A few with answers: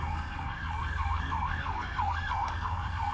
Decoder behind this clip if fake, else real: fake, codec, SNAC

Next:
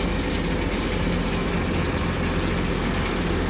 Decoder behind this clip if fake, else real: real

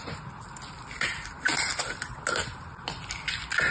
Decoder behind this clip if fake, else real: real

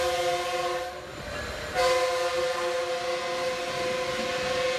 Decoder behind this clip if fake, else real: real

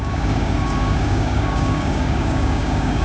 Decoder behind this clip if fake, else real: fake, codec, DAC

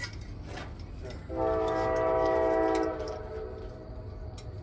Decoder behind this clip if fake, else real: real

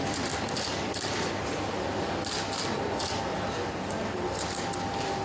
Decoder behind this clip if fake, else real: real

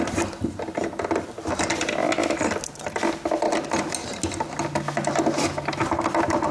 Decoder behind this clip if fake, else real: real